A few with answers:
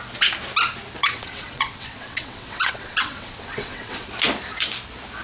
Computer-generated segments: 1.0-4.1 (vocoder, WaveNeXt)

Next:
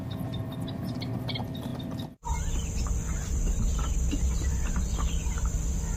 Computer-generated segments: none